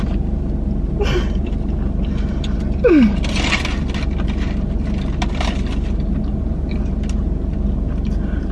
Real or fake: real